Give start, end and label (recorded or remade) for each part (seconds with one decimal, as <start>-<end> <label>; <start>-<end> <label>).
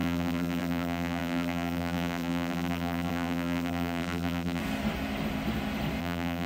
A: 0.0-4.6 remade; 4.6-6.0 recorded; 6.0-6.5 remade